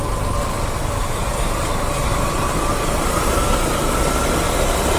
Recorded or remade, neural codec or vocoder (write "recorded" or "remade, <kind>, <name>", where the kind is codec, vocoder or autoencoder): recorded